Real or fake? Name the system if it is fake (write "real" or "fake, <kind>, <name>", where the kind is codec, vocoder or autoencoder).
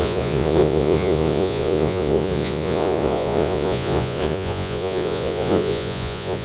fake, vocoder, Vocos